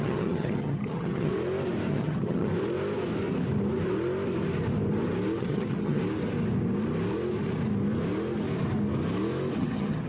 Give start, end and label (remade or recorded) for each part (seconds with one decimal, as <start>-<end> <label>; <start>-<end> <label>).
0.0-1.3 remade; 1.3-1.9 recorded; 1.9-2.5 remade; 2.5-5.4 recorded; 5.4-6.0 remade; 6.0-9.6 recorded; 9.6-10.1 remade